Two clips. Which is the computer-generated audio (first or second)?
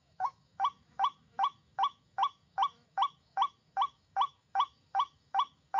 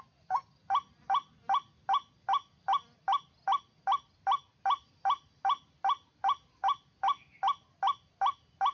first